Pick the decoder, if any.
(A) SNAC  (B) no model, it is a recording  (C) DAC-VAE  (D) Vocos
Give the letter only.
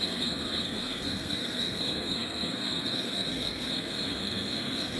A